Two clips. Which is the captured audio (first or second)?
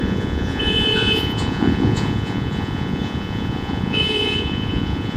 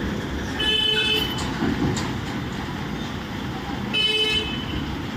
second